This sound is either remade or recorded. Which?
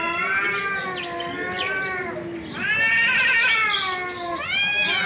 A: recorded